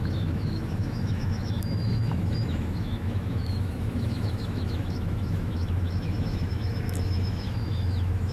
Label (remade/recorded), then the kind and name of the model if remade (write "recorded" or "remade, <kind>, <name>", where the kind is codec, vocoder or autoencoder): remade, autoencoder, DAC-VAE